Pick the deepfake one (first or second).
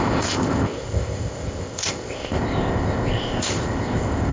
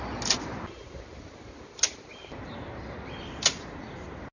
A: first